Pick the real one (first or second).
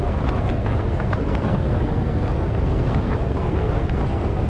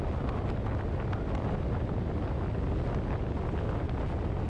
second